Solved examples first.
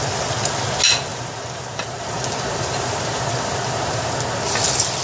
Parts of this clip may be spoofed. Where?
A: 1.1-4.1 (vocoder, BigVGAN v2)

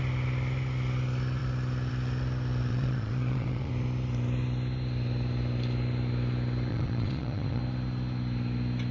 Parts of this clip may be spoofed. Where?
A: 2.7-3.7 (vocoder, Vocos); 6.7-7.6